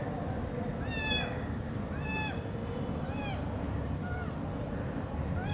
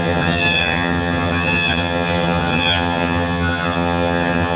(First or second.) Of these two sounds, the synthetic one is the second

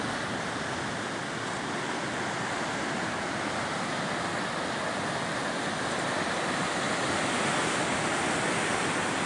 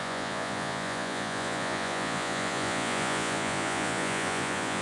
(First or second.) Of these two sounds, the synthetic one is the second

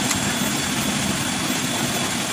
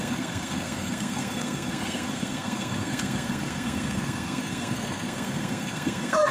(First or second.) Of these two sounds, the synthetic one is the second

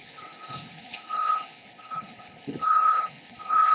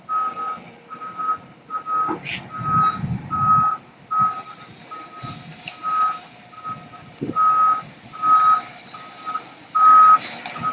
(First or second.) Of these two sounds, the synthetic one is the first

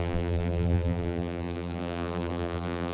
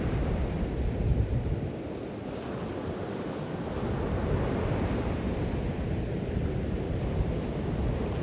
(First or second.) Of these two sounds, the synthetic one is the first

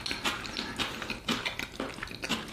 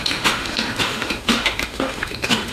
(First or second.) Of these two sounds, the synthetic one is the second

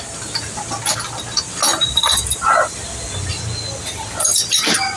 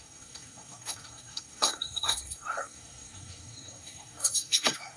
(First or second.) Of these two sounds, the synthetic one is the second